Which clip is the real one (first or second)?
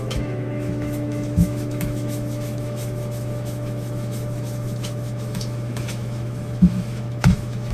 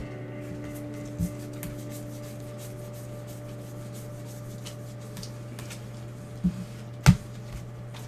second